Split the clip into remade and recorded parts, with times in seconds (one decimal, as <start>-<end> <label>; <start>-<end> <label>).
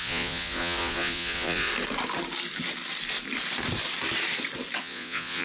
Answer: 0.0-1.7 remade; 1.7-4.8 recorded; 4.8-5.4 remade